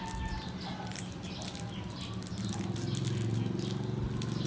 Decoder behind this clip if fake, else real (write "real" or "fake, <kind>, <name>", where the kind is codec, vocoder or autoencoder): real